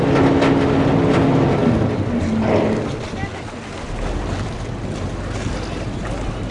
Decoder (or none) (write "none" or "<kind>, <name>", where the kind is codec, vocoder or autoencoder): none